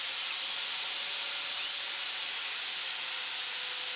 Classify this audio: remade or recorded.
recorded